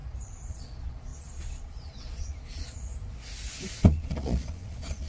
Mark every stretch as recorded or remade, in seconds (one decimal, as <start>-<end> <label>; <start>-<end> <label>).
0.0-0.5 recorded; 0.5-2.9 remade; 2.9-3.8 recorded; 3.8-5.1 remade